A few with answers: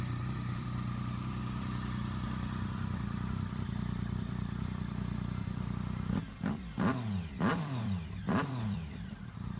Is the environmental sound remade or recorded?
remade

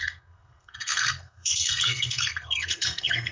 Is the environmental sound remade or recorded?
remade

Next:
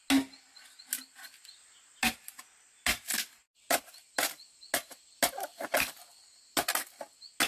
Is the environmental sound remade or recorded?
recorded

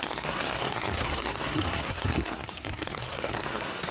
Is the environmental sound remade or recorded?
remade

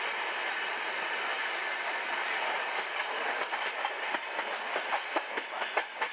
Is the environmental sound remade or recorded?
recorded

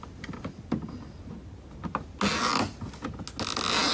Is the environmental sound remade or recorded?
recorded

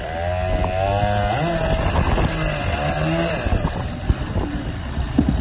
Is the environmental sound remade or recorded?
recorded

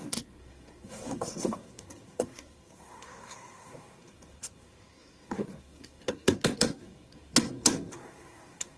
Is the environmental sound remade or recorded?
remade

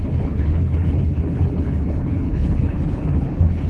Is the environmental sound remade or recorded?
remade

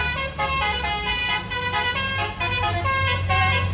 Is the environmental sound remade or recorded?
recorded